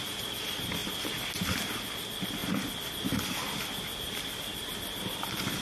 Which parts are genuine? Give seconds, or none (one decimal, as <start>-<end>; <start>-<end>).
0.0-5.6